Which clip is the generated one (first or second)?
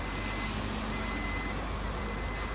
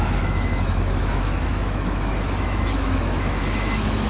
second